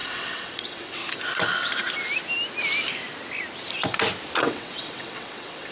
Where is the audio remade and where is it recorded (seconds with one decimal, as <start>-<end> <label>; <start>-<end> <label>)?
0.0-1.0 remade; 1.0-4.4 recorded; 4.4-5.7 remade